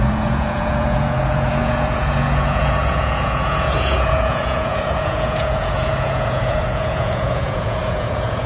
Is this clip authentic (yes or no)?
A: no